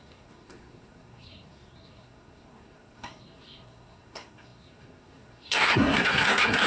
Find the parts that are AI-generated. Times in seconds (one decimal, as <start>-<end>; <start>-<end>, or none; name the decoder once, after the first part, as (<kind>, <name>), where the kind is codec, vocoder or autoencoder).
0.0-6.7 (codec, SNAC)

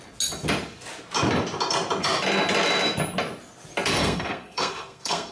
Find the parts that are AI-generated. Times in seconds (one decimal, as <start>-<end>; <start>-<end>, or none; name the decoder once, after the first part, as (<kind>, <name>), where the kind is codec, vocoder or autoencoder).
4.0-5.3 (codec, SNAC)

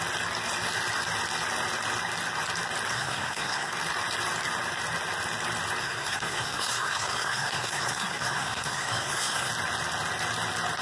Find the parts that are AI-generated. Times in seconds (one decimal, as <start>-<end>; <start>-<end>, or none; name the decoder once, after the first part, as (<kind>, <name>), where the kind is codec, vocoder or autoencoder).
2.9-3.7 (codec, SNAC); 5.8-9.5